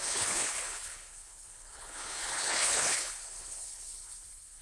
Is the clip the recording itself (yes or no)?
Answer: no